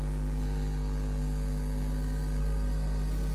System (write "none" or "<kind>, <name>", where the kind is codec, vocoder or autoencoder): codec, SNAC